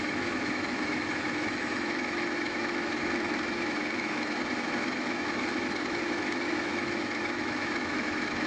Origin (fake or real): fake